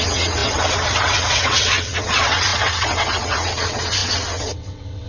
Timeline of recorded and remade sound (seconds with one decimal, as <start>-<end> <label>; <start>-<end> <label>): 0.0-5.1 remade